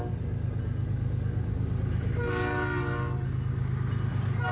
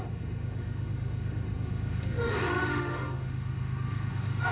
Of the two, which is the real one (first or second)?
first